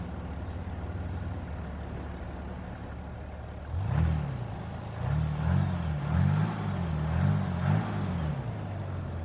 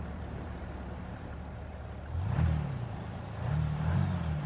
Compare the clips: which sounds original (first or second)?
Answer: first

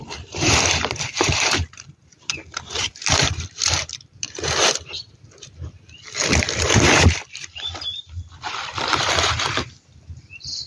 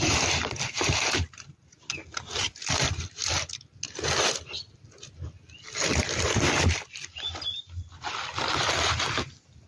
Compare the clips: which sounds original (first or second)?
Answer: second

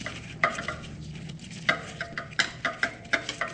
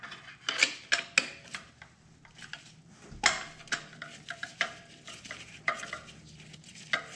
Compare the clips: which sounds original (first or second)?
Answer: second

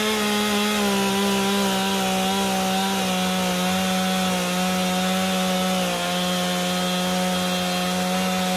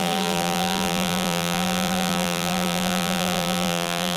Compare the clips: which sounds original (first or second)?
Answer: first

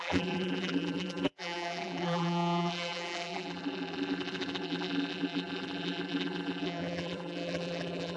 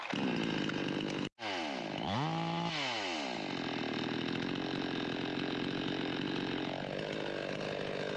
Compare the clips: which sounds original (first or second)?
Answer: second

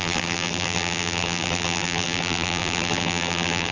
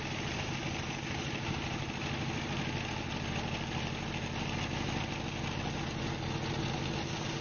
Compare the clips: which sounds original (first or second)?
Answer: second